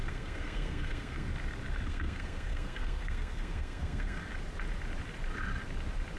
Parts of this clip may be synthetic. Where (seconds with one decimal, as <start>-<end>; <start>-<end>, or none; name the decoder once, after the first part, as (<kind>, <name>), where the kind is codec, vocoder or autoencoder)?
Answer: 0.0-1.3 (codec, SNAC); 1.9-4.2